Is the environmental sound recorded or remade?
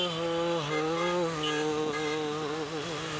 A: recorded